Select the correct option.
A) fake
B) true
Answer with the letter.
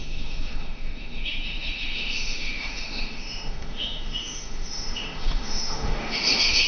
A